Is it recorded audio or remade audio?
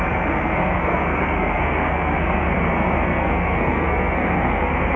remade